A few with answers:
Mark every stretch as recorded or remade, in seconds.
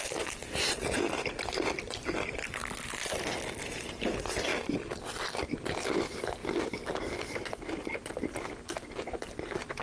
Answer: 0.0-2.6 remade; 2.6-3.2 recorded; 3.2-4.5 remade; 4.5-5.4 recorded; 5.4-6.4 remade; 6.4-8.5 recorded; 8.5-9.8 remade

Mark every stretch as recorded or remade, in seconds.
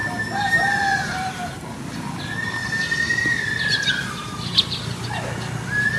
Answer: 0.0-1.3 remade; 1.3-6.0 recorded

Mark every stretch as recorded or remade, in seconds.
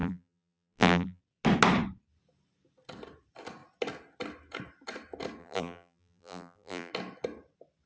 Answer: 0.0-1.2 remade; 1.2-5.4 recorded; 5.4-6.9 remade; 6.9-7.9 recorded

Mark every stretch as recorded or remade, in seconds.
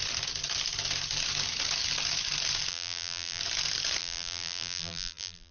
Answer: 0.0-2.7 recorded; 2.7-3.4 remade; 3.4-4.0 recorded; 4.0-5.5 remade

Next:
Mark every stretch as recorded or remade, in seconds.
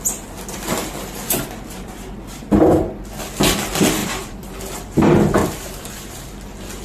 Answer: 0.0-4.0 recorded; 4.0-4.6 remade; 4.6-5.4 recorded; 5.4-6.3 remade; 6.3-6.8 recorded